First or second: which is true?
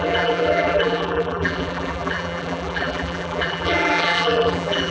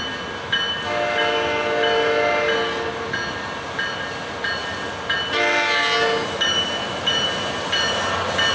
second